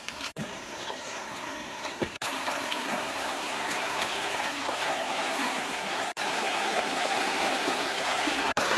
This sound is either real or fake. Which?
fake